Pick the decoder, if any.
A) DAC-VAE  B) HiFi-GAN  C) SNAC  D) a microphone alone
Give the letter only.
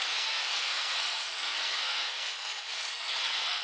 C